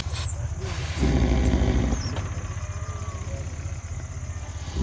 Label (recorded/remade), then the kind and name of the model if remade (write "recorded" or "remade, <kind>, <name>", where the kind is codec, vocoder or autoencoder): recorded